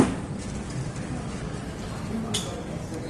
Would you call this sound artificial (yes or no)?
no